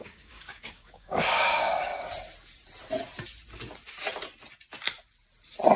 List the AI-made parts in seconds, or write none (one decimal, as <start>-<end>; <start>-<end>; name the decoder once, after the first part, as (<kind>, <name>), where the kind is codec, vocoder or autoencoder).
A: 0.0-1.9 (codec, DAC)